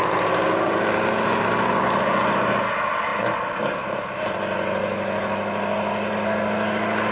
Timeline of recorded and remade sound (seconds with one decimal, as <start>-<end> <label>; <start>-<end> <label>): 0.0-7.1 recorded